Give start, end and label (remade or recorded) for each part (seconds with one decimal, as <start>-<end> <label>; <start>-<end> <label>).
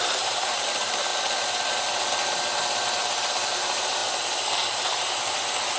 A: 0.0-1.1 remade; 1.1-3.6 recorded; 3.6-4.0 remade; 4.0-5.8 recorded